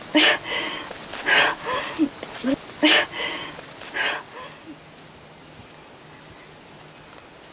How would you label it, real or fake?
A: real